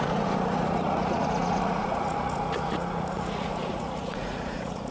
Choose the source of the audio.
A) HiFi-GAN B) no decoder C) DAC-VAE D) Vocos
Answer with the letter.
D